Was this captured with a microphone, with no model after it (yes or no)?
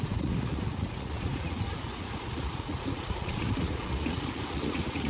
no